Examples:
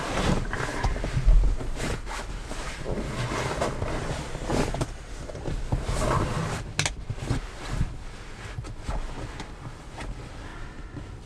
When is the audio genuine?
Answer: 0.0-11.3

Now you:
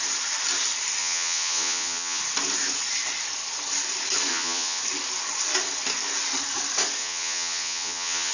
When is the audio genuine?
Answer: 0.0-1.0; 2.2-4.3; 4.8-7.0

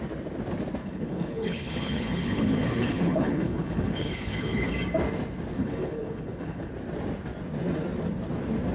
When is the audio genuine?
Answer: 0.0-0.8; 4.7-5.6; 6.7-8.7

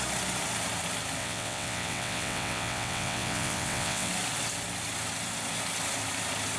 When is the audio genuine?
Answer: 0.0-1.2; 4.1-6.6

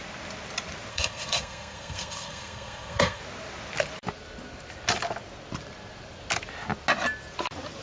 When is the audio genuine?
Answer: 0.0-0.9; 3.2-7.8

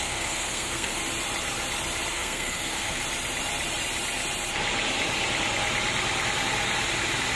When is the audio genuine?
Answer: 1.0-2.1; 3.0-7.4

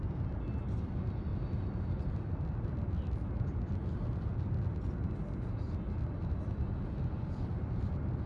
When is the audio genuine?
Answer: 0.0-8.3

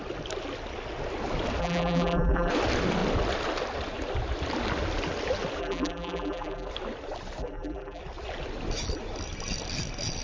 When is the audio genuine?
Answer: 0.0-1.6; 2.5-5.6; 6.7-7.4; 8.0-10.2